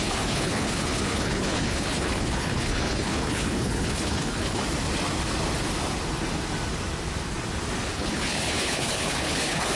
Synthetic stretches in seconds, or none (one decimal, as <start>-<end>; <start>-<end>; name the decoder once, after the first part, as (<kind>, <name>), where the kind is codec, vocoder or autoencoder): 0.0-4.6 (codec, HILCodec); 7.9-9.8